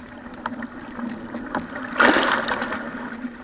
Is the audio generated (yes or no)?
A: no